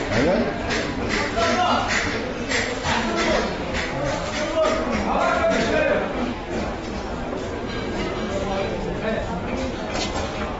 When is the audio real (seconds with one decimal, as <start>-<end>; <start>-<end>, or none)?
0.0-10.6